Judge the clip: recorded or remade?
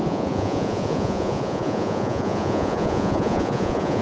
remade